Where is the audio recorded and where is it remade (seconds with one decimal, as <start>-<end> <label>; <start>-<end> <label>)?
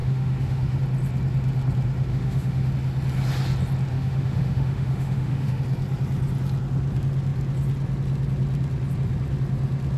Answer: 0.0-0.8 remade; 0.8-2.1 recorded; 2.1-2.7 remade; 2.7-3.9 recorded; 3.9-5.6 remade; 5.6-10.0 recorded